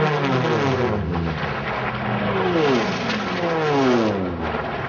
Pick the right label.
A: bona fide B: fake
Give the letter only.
A